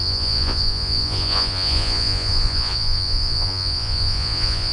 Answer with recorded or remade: remade